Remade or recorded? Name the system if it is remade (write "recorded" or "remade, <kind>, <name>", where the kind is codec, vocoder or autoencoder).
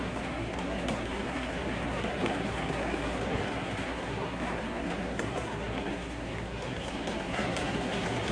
remade, codec, SNAC